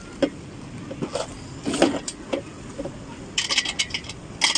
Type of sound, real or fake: real